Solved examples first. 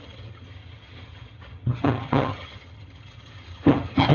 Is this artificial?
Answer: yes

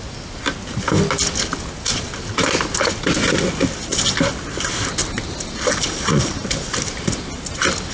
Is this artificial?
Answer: no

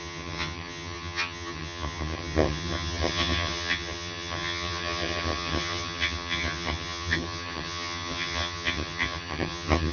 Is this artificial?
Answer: yes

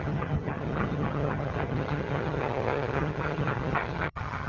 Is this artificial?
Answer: yes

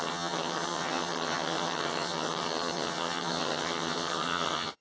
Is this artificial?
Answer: yes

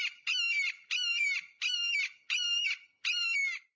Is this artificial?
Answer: no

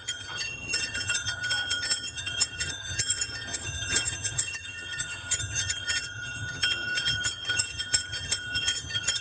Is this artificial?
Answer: yes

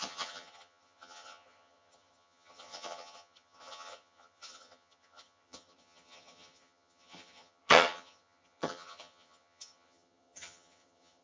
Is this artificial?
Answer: yes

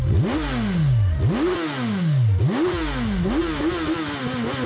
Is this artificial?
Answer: no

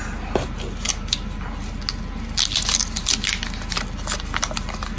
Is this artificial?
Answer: no